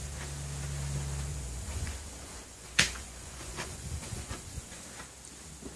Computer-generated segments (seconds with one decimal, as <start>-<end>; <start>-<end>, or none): 1.3-4.8